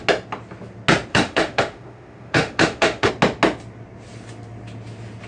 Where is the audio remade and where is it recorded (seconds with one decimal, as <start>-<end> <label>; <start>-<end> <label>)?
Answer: 0.0-1.1 recorded; 1.1-3.1 remade; 3.1-5.3 recorded

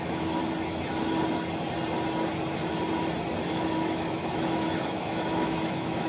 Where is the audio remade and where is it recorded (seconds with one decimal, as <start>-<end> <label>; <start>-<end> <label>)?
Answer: 0.0-0.4 remade; 0.4-3.5 recorded; 3.5-6.1 remade

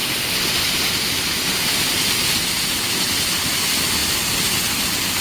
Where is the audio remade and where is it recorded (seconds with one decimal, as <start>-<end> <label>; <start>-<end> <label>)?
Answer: 0.0-5.2 recorded

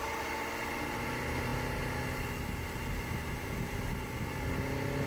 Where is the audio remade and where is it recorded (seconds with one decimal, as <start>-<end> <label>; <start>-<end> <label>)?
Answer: 0.0-5.1 recorded